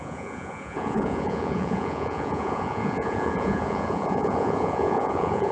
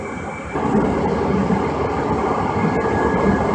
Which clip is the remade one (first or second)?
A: first